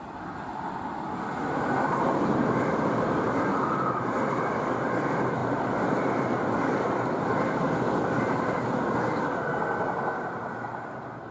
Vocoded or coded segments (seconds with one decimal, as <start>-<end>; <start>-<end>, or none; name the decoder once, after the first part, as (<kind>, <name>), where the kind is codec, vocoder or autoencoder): none

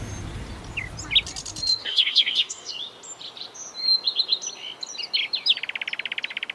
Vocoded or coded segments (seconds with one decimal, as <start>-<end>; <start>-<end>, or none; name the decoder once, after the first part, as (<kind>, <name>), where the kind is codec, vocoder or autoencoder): 1.8-2.7 (codec, DAC)

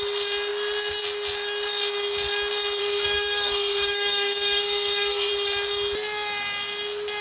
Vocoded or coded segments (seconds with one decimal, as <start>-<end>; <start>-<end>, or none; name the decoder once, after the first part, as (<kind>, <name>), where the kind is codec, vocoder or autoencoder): 2.8-5.3 (codec, SNAC)

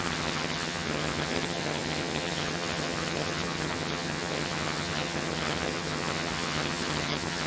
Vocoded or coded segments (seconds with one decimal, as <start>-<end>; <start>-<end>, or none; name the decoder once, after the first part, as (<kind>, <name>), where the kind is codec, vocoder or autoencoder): 0.0-7.5 (vocoder, HiFi-GAN)

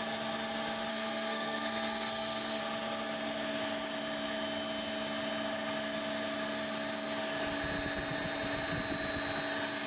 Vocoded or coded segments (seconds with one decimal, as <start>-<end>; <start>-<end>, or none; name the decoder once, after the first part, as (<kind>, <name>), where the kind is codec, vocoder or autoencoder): 0.9-2.6 (codec, SNAC)